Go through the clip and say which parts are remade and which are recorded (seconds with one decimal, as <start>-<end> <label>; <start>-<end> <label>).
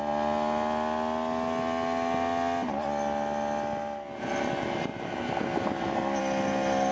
0.0-6.9 recorded